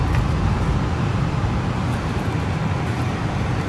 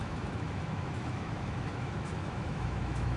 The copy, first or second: second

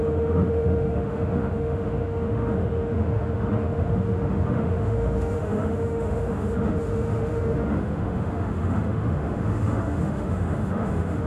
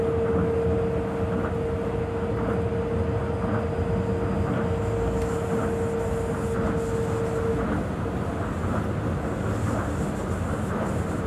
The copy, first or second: first